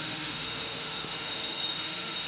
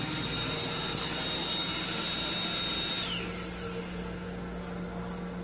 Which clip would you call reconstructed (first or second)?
first